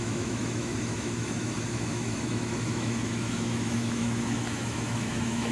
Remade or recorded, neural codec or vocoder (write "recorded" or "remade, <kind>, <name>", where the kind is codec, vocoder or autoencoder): remade, autoencoder, DAC-VAE